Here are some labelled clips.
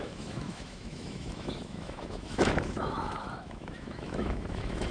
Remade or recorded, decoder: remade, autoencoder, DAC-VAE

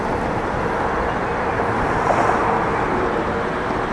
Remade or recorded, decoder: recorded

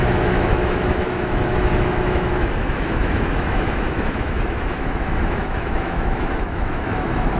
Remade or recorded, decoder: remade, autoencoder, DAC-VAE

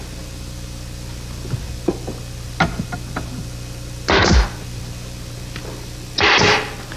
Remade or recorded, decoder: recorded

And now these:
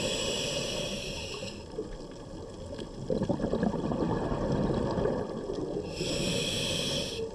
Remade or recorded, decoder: recorded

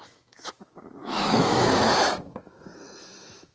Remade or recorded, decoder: remade, autoencoder, DAC-VAE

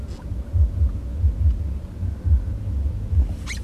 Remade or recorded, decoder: recorded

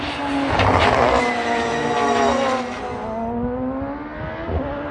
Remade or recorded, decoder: recorded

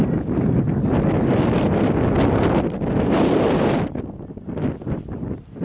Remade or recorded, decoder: recorded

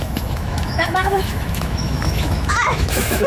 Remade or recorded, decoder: remade, autoencoder, DAC-VAE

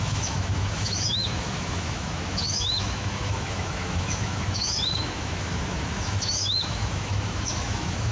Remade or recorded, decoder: remade, autoencoder, DAC-VAE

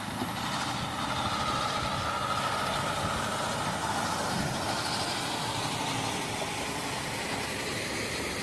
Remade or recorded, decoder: recorded